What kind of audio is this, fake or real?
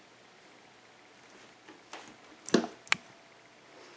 real